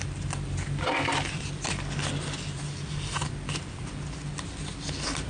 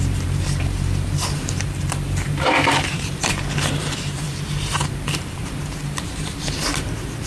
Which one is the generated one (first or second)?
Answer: second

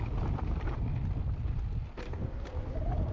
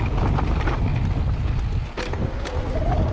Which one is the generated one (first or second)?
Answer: first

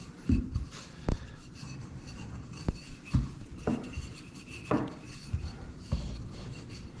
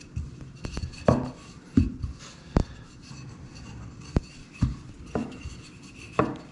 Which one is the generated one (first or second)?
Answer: first